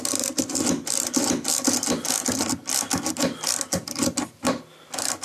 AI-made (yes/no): no